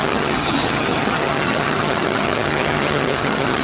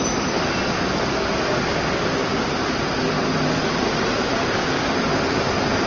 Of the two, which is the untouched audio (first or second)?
second